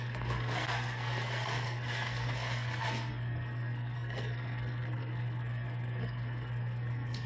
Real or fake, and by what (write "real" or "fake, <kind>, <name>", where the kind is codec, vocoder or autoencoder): fake, codec, SNAC